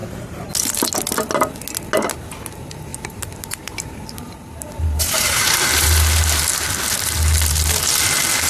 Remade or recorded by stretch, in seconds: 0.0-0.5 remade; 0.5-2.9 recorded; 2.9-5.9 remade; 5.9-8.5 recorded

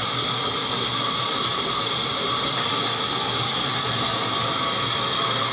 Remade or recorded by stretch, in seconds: 0.0-2.7 remade; 2.7-5.5 recorded